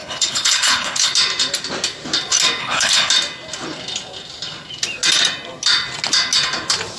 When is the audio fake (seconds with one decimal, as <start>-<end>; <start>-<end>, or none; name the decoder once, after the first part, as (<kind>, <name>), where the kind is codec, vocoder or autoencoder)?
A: 0.0-1.1 (codec, HILCodec); 2.6-3.1